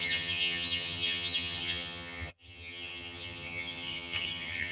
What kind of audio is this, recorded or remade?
remade